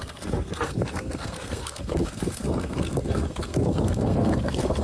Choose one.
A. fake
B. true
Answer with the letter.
A